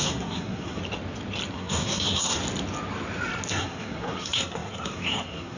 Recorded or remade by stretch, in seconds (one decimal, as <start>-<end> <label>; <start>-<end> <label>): 0.0-0.8 remade; 0.8-1.5 recorded; 1.5-2.4 remade; 2.4-3.5 recorded; 3.5-5.6 remade